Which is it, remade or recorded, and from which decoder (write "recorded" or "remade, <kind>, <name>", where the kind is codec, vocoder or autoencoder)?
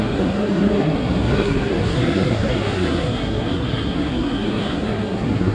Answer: remade, codec, SNAC